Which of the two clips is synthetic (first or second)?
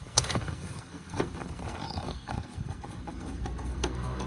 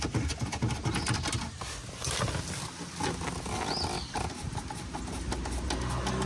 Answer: first